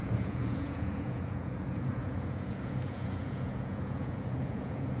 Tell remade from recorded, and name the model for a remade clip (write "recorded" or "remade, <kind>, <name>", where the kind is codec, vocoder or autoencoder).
remade, vocoder, Vocos